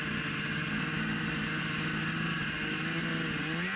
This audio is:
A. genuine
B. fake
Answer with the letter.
A